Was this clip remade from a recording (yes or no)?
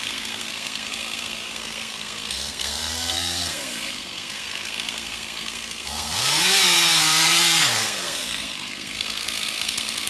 yes